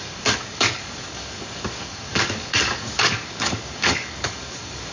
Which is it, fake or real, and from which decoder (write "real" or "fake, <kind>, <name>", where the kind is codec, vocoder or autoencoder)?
fake, codec, DAC